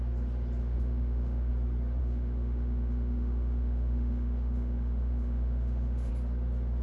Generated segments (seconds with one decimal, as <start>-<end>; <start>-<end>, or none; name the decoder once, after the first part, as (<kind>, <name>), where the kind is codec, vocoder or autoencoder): 0.6-1.5 (autoencoder, DAC-VAE); 2.0-6.1